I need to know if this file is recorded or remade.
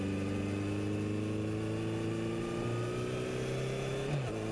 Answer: recorded